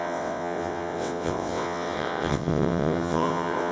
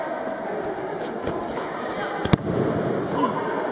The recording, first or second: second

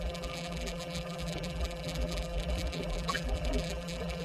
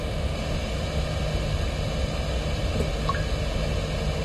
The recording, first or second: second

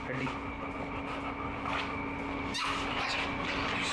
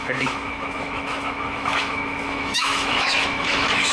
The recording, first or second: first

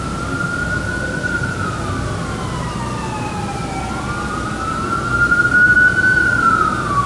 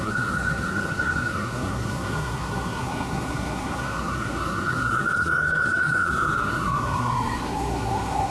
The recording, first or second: first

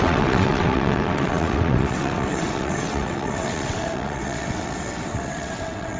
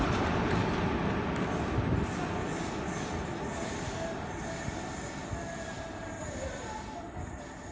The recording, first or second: second